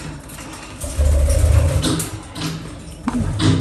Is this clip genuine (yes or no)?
yes